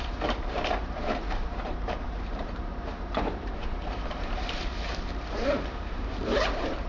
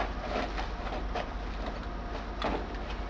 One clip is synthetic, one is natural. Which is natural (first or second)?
second